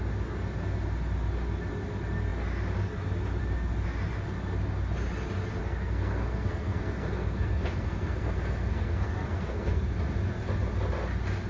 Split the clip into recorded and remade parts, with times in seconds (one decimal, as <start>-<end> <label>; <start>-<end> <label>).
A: 0.0-5.6 recorded; 5.6-9.8 remade; 9.8-11.5 recorded